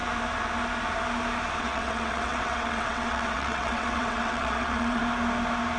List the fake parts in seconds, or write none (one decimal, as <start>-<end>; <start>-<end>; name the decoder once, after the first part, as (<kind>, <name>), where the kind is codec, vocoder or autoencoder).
1.6-5.0 (vocoder, WaveNeXt)